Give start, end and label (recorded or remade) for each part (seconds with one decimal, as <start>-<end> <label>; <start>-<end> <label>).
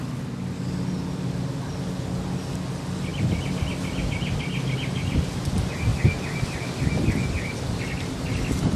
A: 0.0-8.8 recorded